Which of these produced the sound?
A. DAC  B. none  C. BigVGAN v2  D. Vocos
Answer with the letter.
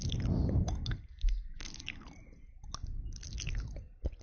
B